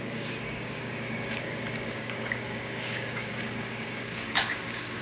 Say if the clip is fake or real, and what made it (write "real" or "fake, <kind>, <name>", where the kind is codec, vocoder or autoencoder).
fake, codec, DAC